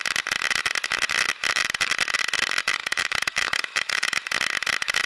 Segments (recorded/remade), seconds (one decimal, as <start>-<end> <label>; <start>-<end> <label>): 0.0-2.8 recorded; 2.8-4.3 remade; 4.3-5.1 recorded